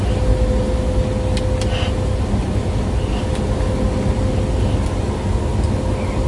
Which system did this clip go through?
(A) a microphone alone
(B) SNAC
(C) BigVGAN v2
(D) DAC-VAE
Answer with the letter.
A